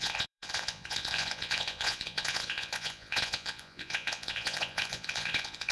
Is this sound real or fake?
fake